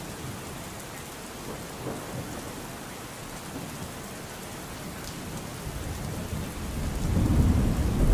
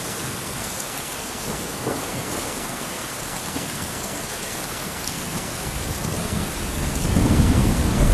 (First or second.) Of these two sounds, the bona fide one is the first